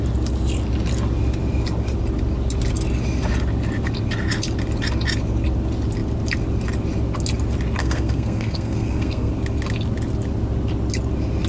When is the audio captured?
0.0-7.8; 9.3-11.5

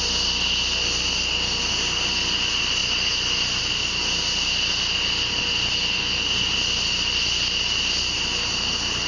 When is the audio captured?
0.0-9.1

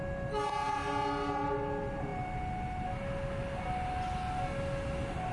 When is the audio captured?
0.0-5.3

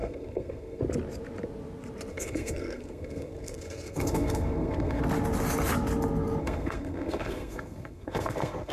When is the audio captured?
0.8-2.1; 5.0-6.4

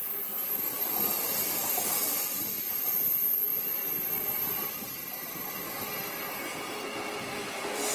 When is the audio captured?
0.0-7.9

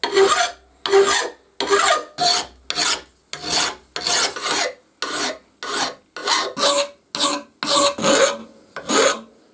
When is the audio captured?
0.0-9.5

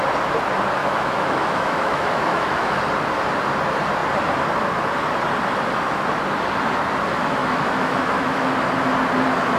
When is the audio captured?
0.0-0.8; 2.8-7.4; 8.5-9.6